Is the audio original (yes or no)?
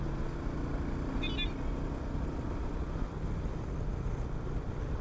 yes